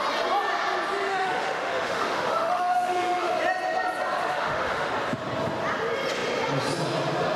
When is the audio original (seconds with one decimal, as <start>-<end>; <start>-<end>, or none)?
0.0-1.1; 3.3-4.2; 4.9-7.4